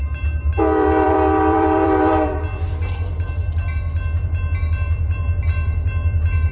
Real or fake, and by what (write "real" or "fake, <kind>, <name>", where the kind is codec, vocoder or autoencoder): fake, vocoder, BigVGAN v2